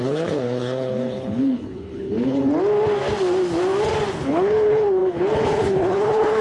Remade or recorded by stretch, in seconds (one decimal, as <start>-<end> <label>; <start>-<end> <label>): 0.0-2.5 remade; 2.5-4.1 recorded; 4.1-6.4 remade